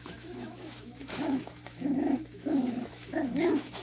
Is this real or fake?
fake